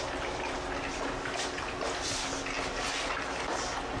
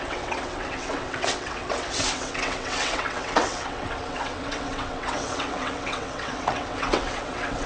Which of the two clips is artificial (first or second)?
second